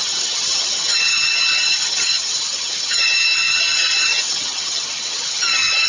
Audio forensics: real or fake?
fake